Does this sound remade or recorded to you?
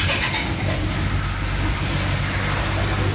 recorded